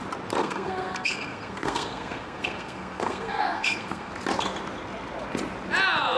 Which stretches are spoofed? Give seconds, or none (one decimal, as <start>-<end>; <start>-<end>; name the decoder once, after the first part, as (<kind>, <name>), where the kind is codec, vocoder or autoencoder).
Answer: 0.4-4.1 (codec, SNAC)